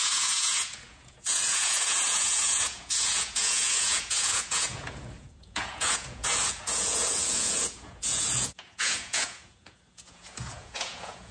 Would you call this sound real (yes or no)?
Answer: no